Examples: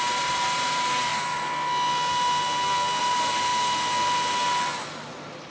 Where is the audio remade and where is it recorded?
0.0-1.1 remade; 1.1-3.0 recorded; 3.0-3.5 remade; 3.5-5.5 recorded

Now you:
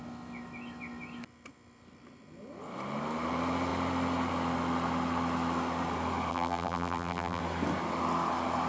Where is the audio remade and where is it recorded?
0.0-6.3 recorded; 6.3-7.4 remade; 7.4-8.7 recorded

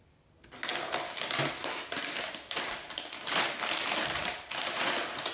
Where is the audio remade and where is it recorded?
0.0-0.7 recorded; 0.7-1.2 remade; 1.2-1.6 recorded; 1.6-4.8 remade; 4.8-5.3 recorded

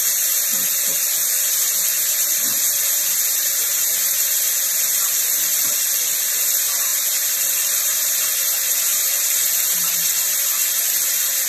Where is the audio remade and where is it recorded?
0.0-6.9 recorded; 6.9-8.2 remade; 8.2-11.5 recorded